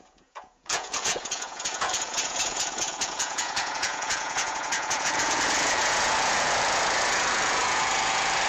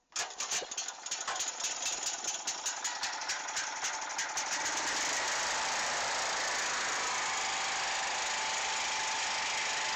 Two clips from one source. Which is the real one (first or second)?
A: second